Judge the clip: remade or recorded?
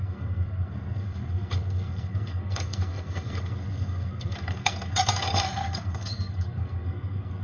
remade